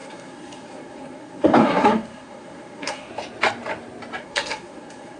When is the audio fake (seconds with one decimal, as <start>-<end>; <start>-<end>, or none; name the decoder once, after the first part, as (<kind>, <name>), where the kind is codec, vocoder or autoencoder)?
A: 0.0-3.1 (codec, SNAC); 4.2-5.2

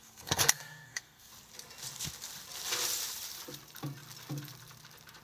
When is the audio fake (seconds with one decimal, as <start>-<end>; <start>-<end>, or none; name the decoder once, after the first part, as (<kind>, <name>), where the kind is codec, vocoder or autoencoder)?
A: 0.0-1.3 (codec, SNAC)